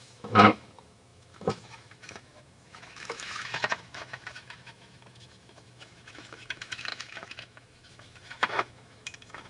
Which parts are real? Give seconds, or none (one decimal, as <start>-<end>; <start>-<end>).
none